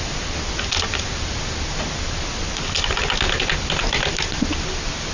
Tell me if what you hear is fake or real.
real